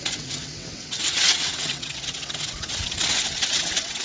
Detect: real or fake fake